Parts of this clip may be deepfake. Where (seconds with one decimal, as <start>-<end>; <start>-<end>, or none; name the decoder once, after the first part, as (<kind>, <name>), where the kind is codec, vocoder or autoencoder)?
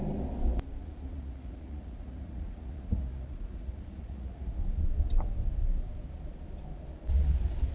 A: 0.8-4.5 (vocoder, Vocos)